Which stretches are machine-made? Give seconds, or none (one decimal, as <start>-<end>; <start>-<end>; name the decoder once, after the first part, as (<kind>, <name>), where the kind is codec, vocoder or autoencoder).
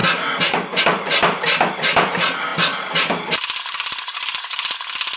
none